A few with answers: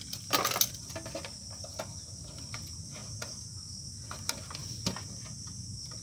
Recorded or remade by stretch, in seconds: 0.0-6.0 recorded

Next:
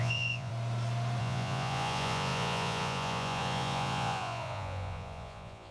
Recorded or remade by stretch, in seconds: 0.0-0.5 remade; 0.5-1.2 recorded; 1.2-5.7 remade

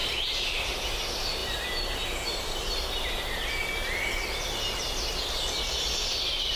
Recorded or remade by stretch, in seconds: 0.0-0.7 remade; 0.7-1.4 recorded; 1.4-2.7 remade; 2.7-6.6 recorded

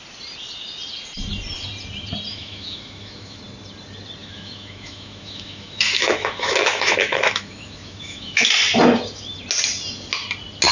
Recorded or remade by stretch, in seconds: 0.0-2.3 recorded; 2.3-3.4 remade; 3.4-4.2 recorded; 4.2-8.5 remade; 8.5-10.7 recorded

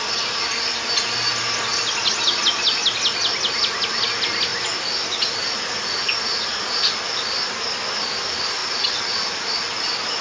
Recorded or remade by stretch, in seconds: 0.0-10.2 recorded

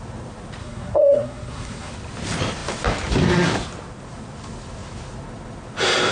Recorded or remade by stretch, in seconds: 0.0-0.6 recorded; 0.6-1.9 remade; 1.9-6.1 recorded

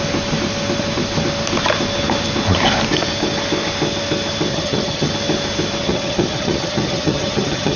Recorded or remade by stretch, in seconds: 0.0-4.5 recorded; 4.5-5.1 remade; 5.1-5.8 recorded; 5.8-7.8 remade

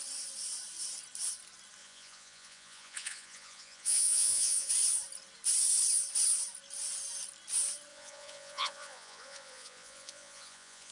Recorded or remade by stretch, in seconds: 0.0-1.8 recorded; 1.8-4.7 remade; 4.7-7.9 recorded; 7.9-10.9 remade